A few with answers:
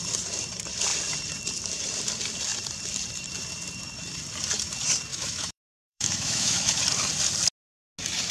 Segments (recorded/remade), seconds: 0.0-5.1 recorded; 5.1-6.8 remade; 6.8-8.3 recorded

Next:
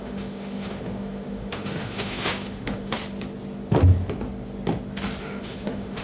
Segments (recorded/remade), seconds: 0.0-3.0 remade; 3.0-5.2 recorded; 5.2-6.0 remade